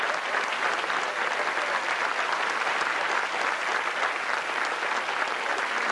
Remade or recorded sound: recorded